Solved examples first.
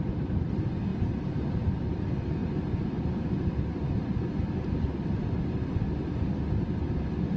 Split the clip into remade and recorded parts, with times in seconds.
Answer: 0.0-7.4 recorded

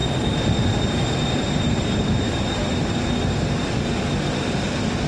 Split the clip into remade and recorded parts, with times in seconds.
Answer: 0.0-3.1 remade; 3.1-5.1 recorded

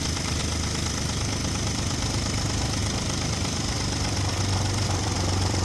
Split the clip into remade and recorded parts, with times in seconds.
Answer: 0.0-0.4 remade; 0.4-1.5 recorded; 1.5-5.6 remade

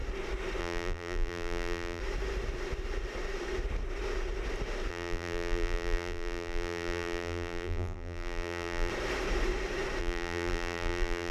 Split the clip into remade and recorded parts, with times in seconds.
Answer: 0.0-0.6 recorded; 0.6-2.0 remade; 2.0-4.9 recorded; 4.9-8.9 remade; 8.9-10.0 recorded; 10.0-11.3 remade

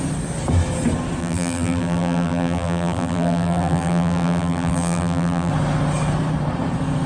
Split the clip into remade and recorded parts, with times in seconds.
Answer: 0.0-1.2 recorded; 1.2-5.5 remade; 5.5-7.1 recorded

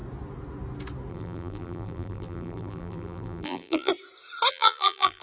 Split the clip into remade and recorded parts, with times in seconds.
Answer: 0.0-1.1 recorded; 1.1-3.9 remade; 3.9-4.5 recorded; 4.5-5.2 remade

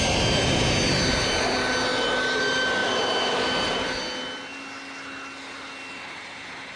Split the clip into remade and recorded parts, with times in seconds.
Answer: 0.0-2.8 recorded; 2.8-4.0 remade; 4.0-6.8 recorded

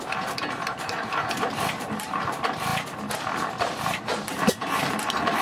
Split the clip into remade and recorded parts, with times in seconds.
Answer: 0.0-2.7 remade; 2.7-4.0 recorded; 4.0-5.4 remade